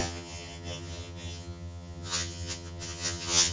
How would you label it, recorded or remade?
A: remade